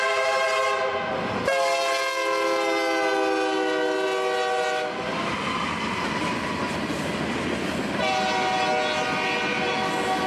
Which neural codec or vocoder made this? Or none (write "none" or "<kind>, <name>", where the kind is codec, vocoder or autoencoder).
none